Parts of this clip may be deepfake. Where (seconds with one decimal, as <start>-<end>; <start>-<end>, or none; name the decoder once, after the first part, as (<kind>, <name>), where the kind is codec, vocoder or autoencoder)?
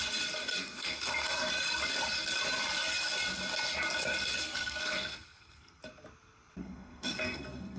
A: 0.6-1.5 (codec, SNAC); 4.4-5.8; 6.6-7.8